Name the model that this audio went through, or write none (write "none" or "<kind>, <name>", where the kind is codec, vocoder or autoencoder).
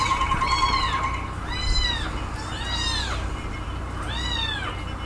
none